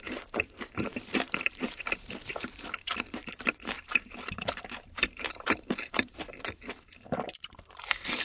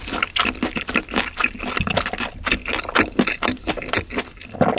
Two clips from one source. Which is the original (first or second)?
second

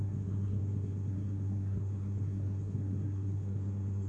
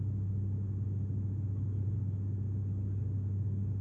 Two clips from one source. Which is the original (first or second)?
second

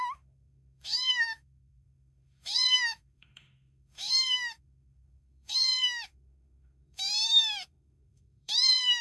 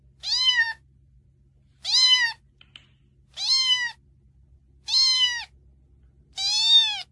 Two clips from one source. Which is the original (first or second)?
second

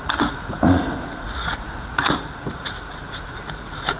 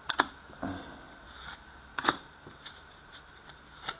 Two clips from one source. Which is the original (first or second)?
second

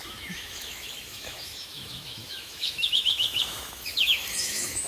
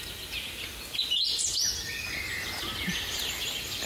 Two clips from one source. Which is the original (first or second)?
second